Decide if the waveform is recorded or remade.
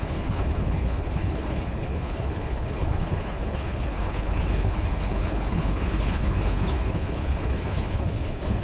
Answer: remade